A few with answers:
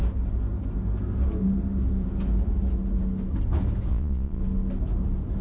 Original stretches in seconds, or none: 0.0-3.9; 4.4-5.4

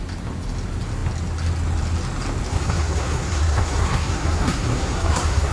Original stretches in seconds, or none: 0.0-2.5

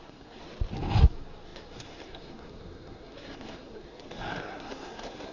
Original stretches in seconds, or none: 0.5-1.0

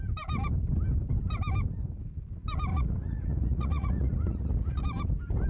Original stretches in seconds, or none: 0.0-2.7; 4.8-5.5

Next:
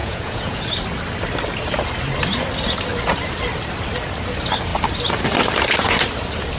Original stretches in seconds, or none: 0.6-6.6

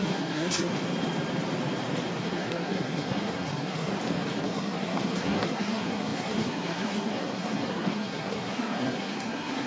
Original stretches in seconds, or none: 0.7-2.2; 3.9-4.4

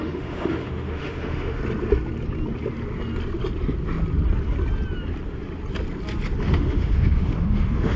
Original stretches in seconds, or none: 1.6-6.4